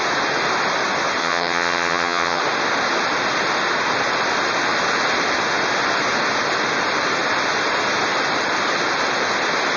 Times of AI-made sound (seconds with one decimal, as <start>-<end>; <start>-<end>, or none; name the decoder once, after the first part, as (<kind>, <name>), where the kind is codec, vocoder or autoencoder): 1.2-2.4 (vocoder, HiFi-GAN)